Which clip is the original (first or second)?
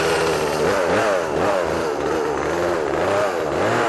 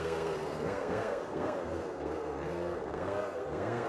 first